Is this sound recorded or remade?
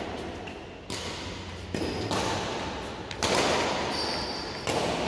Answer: recorded